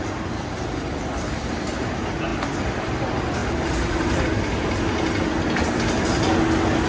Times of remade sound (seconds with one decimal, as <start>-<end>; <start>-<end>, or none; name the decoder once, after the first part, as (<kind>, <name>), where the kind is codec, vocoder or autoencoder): 3.4-4.2 (vocoder, BigVGAN v2)